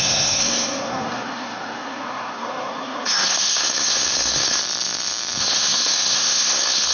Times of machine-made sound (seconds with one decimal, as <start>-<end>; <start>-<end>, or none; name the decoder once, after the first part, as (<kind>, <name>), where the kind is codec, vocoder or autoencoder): 0.0-4.6 (codec, SNAC); 5.4-6.9